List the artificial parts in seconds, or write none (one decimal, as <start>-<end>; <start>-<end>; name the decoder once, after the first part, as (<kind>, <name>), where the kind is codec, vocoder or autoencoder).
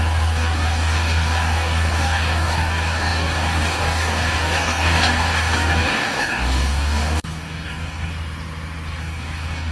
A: 0.0-8.1 (codec, DAC); 9.0-9.7